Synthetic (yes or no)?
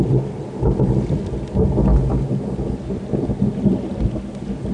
no